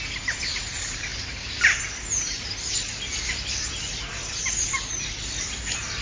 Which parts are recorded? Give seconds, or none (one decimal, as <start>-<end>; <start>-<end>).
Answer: 0.0-6.0